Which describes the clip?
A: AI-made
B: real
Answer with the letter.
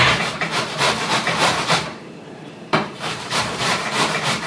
A